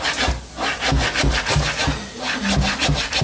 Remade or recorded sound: recorded